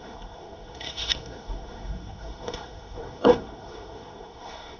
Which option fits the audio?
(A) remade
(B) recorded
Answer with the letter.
A